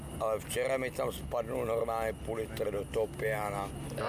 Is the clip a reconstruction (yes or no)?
no